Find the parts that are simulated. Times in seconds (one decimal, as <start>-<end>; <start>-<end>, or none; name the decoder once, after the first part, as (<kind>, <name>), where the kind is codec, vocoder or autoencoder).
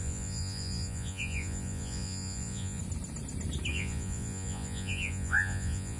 0.0-2.8 (vocoder, Vocos); 3.7-6.0